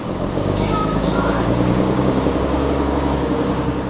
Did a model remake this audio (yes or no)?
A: yes